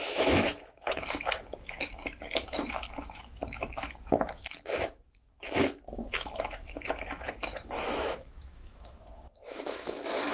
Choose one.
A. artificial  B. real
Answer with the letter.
A